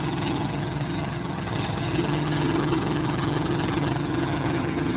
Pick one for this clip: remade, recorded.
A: remade